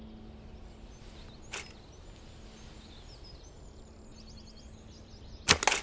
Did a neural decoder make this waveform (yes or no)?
no